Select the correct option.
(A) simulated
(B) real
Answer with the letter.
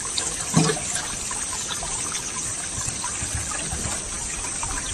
B